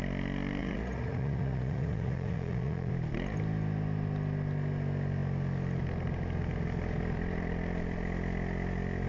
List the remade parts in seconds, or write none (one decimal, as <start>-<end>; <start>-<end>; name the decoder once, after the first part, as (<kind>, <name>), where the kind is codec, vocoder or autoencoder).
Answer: 0.6-2.9 (vocoder, Vocos)